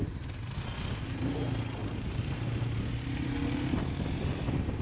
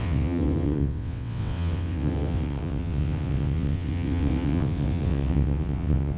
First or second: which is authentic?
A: first